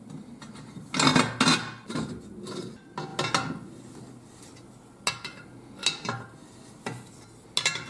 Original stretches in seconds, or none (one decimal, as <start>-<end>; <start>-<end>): 0.0-7.9